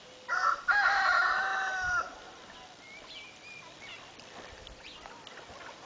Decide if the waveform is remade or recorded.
recorded